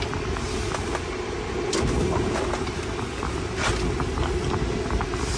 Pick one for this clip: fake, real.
real